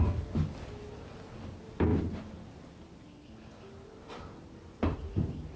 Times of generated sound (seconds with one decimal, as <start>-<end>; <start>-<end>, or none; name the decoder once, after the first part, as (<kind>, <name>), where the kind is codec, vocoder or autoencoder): none